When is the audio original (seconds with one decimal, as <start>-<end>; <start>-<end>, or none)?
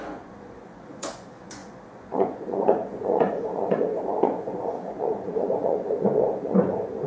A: none